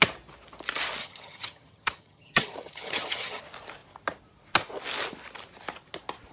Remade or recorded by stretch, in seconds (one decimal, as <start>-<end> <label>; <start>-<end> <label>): 0.0-1.0 recorded; 1.0-3.4 remade; 3.4-6.3 recorded